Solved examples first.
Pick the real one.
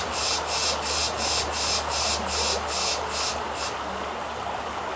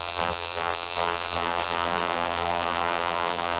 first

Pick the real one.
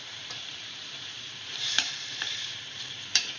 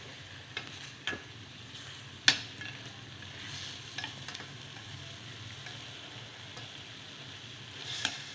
second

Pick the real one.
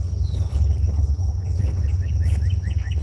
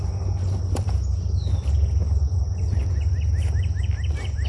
second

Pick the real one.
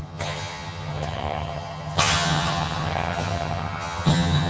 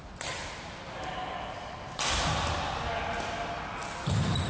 second